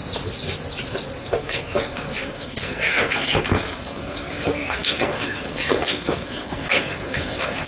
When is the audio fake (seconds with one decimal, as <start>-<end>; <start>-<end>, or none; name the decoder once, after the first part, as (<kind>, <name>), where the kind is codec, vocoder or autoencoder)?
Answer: 1.2-7.7 (codec, SNAC)